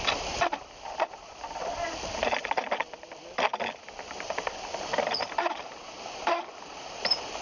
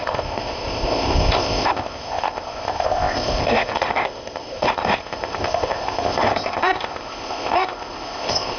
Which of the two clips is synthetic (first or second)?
second